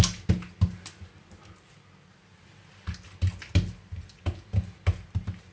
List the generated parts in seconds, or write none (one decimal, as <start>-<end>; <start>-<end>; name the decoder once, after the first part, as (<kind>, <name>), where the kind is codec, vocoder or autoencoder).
none